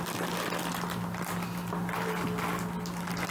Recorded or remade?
recorded